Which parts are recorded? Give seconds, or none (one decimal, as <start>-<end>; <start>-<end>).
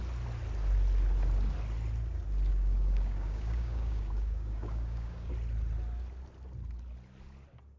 0.0-2.5; 5.3-7.8